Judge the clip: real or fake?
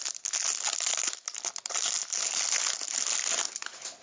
real